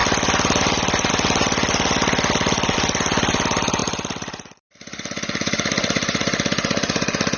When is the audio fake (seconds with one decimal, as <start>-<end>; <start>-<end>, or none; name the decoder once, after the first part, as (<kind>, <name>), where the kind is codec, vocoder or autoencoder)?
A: 3.8-7.4 (vocoder, BigVGAN v2)